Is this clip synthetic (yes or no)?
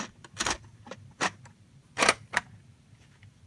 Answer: yes